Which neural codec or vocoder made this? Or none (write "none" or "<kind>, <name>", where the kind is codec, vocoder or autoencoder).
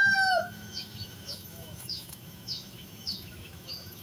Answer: autoencoder, DAC-VAE